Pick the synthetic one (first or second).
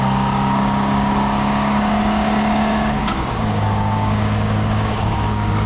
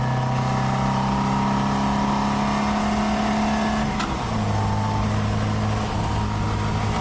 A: first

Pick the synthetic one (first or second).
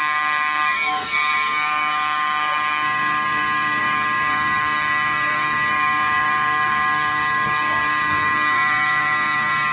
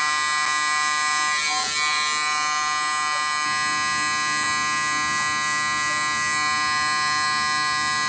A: first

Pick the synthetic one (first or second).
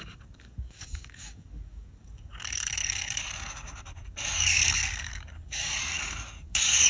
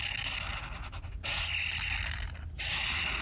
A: first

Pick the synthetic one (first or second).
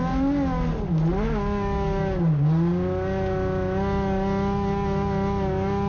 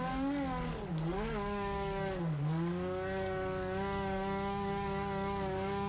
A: second